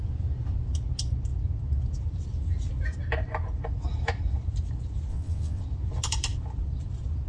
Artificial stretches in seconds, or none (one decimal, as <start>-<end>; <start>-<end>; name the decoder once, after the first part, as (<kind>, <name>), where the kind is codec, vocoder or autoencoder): 5.1-5.6 (vocoder, WaveNeXt)